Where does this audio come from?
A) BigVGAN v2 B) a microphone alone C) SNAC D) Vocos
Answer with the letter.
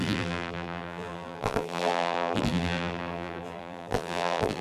A